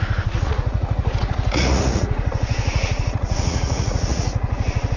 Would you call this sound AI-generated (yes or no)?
yes